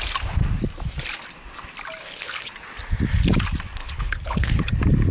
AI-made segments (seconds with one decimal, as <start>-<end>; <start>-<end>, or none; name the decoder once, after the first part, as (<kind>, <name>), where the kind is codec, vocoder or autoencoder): 2.0-2.5 (codec, HILCodec); 3.8-4.6